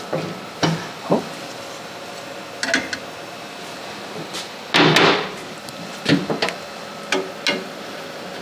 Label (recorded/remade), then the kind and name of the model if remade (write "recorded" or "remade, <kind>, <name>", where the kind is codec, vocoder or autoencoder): recorded